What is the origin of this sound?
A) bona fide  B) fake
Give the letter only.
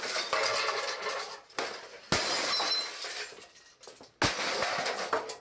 A